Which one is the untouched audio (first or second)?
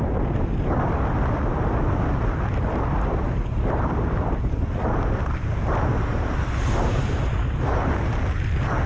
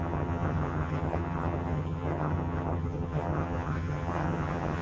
first